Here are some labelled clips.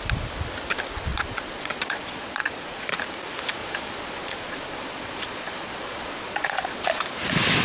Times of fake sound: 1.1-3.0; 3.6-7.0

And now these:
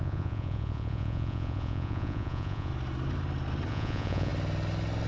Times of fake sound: 0.0-2.7; 3.7-4.3

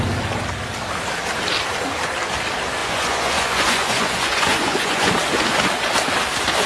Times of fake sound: 2.8-5.1

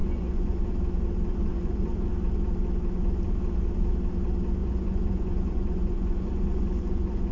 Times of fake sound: 0.0-0.6; 1.4-2.1; 4.6-7.3